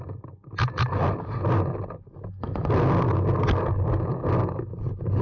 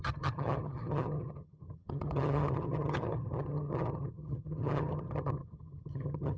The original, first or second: first